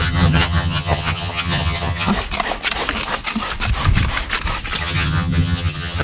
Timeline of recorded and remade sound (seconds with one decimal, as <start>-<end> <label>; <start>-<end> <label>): 0.0-2.1 remade; 2.1-4.8 recorded; 4.8-6.0 remade